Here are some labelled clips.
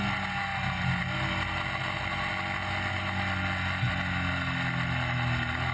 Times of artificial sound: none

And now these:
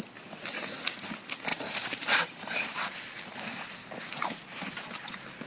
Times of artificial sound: 1.5-2.8 (vocoder, BigVGAN v2); 3.8-5.1

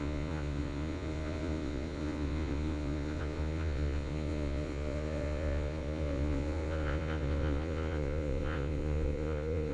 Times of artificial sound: 0.0-9.7 (vocoder, Vocos)

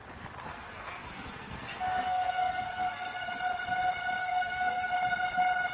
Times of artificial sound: 0.5-3.3 (codec, SNAC); 4.2-4.9

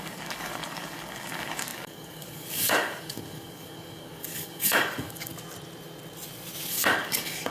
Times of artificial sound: 0.0-5.3 (codec, DAC); 6.7-7.5

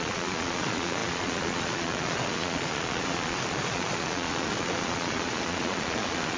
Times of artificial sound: 0.0-6.4 (vocoder, Vocos)

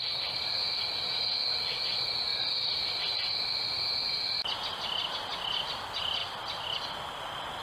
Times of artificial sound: 6.2-6.8 (vocoder, BigVGAN v2)

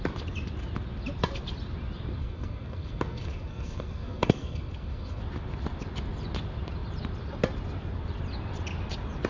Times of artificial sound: 2.2-5.2 (codec, SNAC)